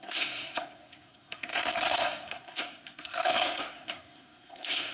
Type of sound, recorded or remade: remade